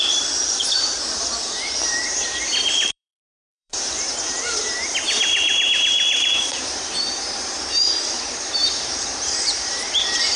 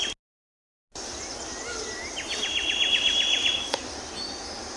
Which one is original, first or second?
second